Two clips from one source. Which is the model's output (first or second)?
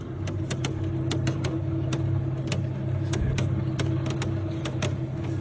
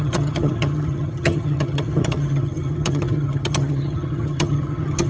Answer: second